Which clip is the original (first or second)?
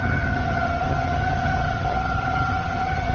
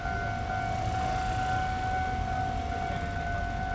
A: second